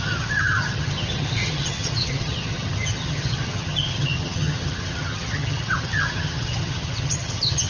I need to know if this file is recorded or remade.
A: remade